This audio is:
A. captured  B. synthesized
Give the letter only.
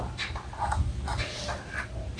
A